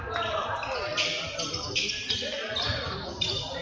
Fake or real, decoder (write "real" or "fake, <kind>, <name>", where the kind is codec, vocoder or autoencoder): fake, vocoder, BigVGAN v2